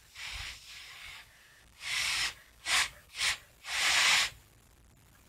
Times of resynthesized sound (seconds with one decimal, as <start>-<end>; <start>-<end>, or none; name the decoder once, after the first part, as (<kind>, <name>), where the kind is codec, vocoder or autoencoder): 1.0-3.3 (codec, DAC)